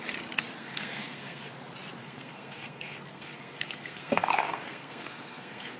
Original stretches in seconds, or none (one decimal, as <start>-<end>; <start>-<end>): 0.0-0.6; 1.5-2.0